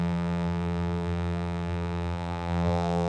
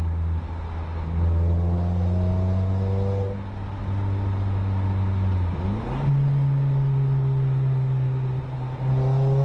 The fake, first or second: first